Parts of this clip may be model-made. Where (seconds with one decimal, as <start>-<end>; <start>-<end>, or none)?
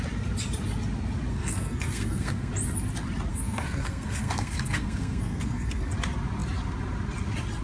1.3-2.5; 3.3-5.9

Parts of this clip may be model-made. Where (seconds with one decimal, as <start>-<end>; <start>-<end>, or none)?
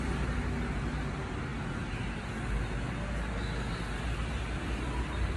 none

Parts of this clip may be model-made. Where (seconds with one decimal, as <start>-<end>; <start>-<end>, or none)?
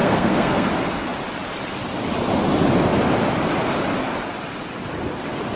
0.0-0.7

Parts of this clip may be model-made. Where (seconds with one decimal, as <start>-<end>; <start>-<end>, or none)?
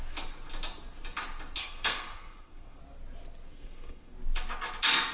1.6-2.8; 3.5-4.1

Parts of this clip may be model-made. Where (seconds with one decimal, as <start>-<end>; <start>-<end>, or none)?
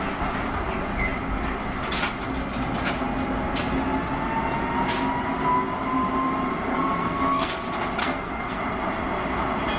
6.7-7.5; 8.0-8.6